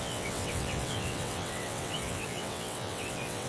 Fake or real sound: fake